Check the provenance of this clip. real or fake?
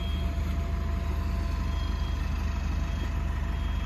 real